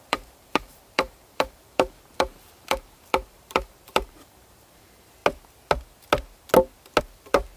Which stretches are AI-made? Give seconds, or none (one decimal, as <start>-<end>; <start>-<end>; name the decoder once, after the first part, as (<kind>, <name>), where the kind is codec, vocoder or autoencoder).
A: 0.0-5.2 (vocoder, BigVGAN v2); 7.0-7.6